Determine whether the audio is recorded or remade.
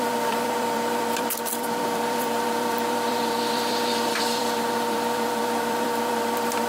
remade